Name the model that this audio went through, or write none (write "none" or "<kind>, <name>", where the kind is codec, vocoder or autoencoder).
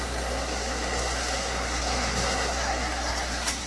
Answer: codec, SNAC